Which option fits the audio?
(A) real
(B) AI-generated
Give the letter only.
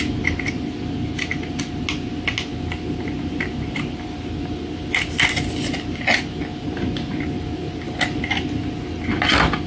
A